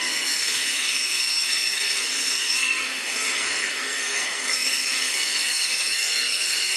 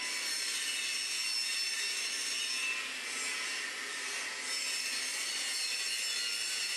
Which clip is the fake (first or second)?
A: first